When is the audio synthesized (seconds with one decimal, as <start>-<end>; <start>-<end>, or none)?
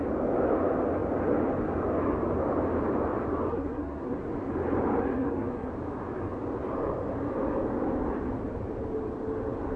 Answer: 3.5-4.2; 5.0-5.7